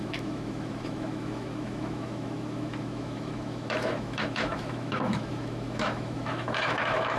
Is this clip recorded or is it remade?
remade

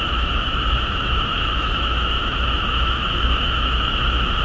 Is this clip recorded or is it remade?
remade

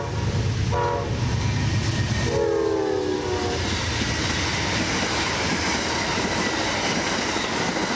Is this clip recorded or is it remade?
recorded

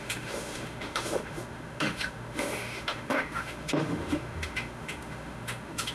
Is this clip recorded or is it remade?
remade